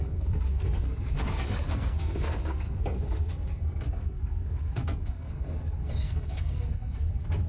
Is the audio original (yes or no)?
no